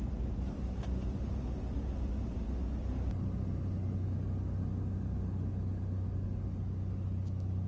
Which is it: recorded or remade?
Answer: recorded